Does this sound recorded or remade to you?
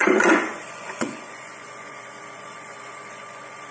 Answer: remade